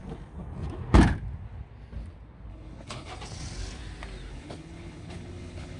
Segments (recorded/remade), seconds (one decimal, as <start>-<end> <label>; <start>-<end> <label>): 0.0-2.5 recorded; 2.5-3.1 remade; 3.1-4.3 recorded; 4.3-5.8 remade

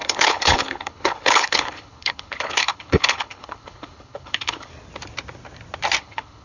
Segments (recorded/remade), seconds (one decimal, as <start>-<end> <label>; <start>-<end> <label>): 0.0-4.7 remade; 4.7-6.0 recorded; 6.0-6.4 remade